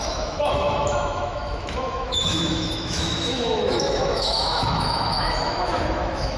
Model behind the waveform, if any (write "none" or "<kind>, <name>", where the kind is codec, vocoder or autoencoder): autoencoder, DAC-VAE